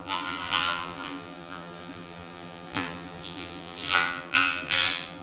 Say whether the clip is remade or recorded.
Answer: remade